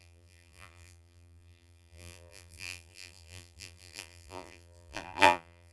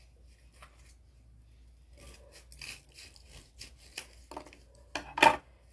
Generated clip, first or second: first